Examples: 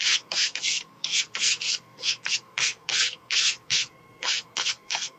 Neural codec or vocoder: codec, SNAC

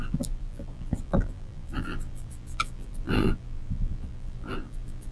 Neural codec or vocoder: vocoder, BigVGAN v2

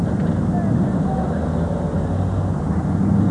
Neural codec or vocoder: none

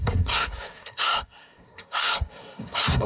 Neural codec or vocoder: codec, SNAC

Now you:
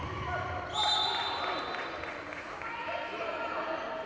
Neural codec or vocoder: none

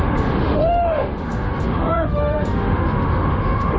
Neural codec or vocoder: autoencoder, DAC-VAE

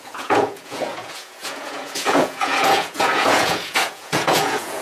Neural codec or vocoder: vocoder, Vocos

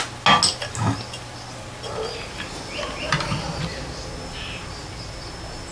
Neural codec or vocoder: none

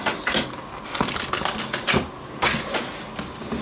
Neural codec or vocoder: none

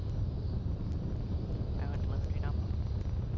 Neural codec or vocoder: none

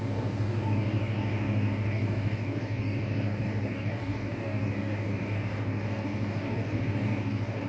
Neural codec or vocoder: codec, DAC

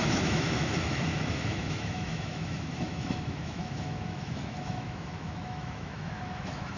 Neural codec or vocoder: autoencoder, DAC-VAE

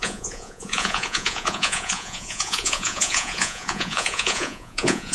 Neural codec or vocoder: vocoder, Vocos